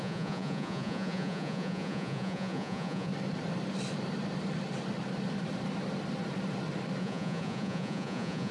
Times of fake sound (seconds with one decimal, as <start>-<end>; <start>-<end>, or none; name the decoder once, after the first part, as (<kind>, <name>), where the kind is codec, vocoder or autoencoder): 0.0-3.1 (vocoder, Vocos); 7.0-8.5